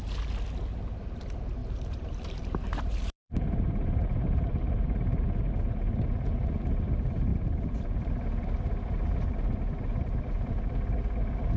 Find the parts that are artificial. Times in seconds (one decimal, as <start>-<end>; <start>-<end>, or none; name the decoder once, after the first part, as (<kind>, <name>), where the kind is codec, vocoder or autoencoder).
1.6-5.5 (vocoder, BigVGAN v2); 7.3-8.1